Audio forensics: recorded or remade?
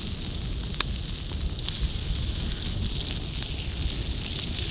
recorded